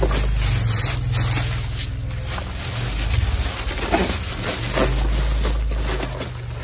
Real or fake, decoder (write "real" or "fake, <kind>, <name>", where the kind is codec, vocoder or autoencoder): real